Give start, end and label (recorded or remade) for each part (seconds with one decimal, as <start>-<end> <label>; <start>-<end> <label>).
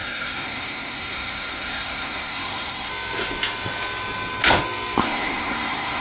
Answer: 0.0-2.9 remade; 2.9-5.0 recorded; 5.0-6.0 remade